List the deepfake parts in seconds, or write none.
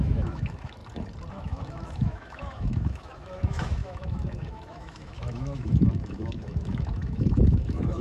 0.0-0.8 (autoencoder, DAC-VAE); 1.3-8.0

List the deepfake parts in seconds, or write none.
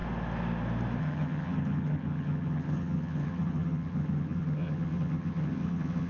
1.0-6.1 (vocoder, HiFi-GAN)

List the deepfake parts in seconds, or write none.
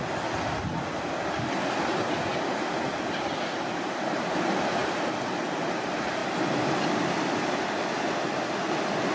none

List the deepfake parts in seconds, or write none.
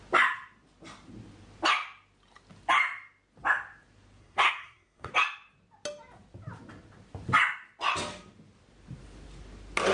4.2-5.1 (codec, SNAC)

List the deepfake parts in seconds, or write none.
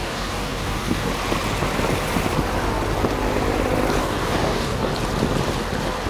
0.0-1.1 (codec, DAC); 4.0-4.9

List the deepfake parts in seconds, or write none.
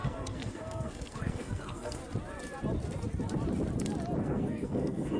0.0-2.0 (codec, SNAC); 4.2-5.2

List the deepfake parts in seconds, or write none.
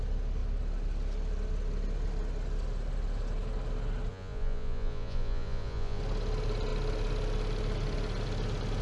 4.1-6.0 (vocoder, Vocos)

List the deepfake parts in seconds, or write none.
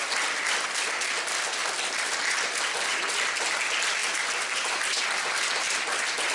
1.6-2.2 (vocoder, BigVGAN v2); 2.9-3.6; 4.0-5.2